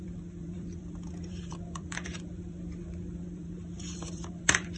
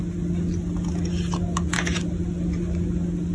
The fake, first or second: first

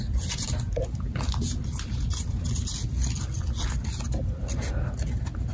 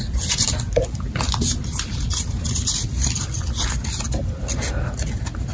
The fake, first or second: second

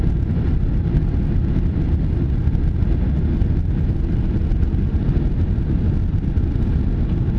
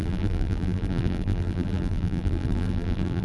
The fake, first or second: second